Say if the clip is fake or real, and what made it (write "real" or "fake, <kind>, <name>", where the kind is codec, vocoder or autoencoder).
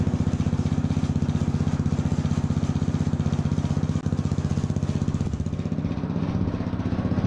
real